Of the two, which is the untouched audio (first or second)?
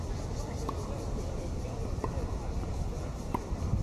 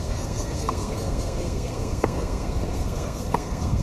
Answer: first